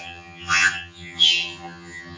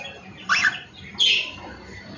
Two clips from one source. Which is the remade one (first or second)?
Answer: first